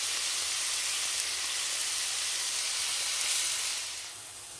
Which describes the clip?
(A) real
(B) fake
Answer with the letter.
A